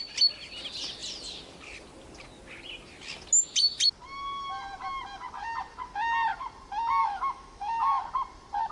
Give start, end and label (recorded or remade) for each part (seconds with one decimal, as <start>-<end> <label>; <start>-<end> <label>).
0.0-7.0 recorded; 7.0-8.0 remade; 8.0-8.7 recorded